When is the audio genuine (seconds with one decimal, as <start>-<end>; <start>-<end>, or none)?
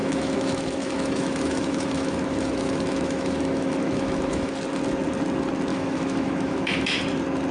4.5-5.7; 7.0-7.5